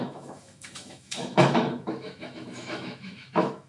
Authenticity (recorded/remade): remade